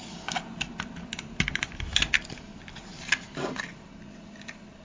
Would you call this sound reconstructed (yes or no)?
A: no